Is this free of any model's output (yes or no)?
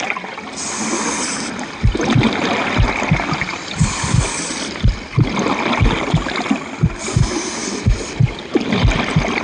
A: yes